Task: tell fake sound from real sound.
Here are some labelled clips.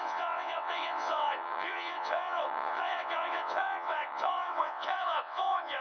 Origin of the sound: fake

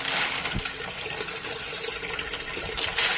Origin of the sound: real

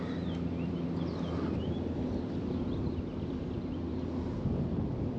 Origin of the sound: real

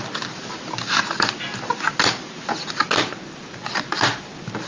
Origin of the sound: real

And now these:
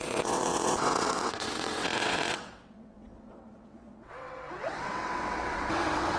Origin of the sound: fake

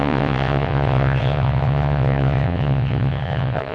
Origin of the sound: fake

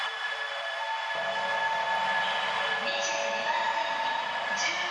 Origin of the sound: real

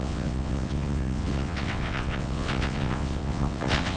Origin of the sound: fake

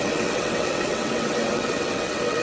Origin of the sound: fake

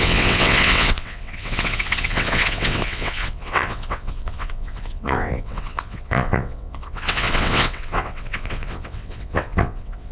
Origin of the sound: fake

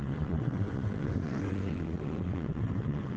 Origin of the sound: fake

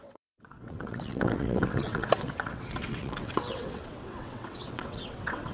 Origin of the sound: fake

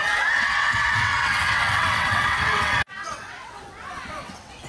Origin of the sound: fake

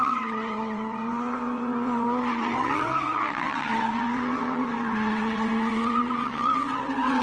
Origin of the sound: fake